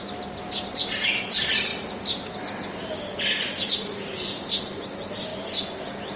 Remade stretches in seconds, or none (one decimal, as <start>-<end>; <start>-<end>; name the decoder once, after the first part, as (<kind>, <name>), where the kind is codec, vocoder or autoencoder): none